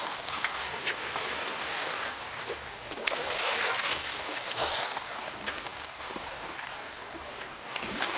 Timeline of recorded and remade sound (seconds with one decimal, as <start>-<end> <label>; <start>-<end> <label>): 0.0-8.2 remade